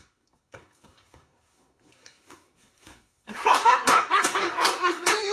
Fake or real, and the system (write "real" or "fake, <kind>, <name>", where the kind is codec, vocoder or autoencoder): fake, codec, SNAC